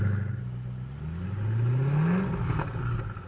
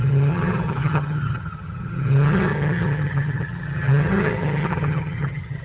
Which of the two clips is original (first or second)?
first